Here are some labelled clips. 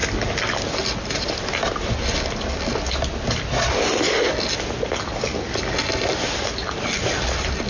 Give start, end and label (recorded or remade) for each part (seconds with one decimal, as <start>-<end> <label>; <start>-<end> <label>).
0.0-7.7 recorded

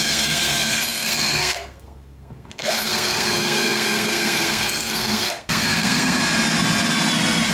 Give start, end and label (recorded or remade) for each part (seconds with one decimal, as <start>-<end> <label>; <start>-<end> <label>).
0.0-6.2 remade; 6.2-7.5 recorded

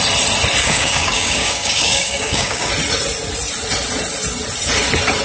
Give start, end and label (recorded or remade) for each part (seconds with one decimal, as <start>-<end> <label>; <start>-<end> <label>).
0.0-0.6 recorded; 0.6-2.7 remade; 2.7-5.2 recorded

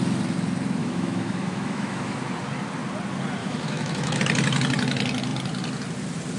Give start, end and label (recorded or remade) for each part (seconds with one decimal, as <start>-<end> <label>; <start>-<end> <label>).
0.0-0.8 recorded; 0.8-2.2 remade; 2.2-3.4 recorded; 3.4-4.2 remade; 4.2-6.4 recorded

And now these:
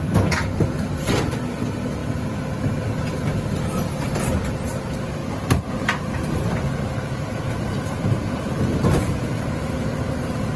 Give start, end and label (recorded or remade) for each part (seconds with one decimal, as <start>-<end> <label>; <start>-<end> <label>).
0.0-5.2 recorded; 5.2-10.6 remade

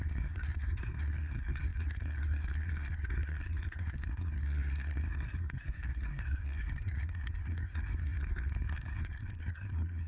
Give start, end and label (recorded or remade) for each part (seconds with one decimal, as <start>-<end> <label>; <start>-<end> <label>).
0.0-10.1 remade

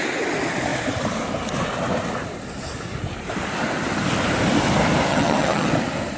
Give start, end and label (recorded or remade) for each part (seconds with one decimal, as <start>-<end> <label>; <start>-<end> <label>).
0.0-5.1 recorded; 5.1-5.7 remade; 5.7-6.2 recorded